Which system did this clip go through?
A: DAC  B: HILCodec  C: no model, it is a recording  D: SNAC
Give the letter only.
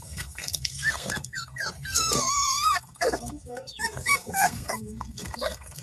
D